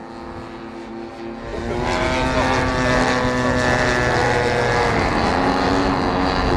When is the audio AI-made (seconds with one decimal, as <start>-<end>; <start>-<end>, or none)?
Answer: none